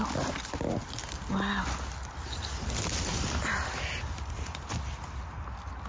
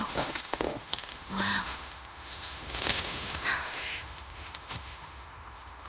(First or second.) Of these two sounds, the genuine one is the first